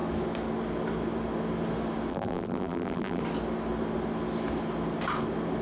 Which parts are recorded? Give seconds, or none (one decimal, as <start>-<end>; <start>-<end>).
0.0-2.1; 3.2-5.6